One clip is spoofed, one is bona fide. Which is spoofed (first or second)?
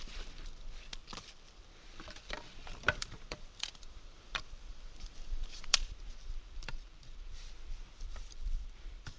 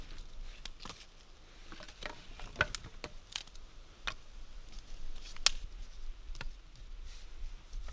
first